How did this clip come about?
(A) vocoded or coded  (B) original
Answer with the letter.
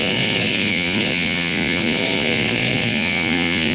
A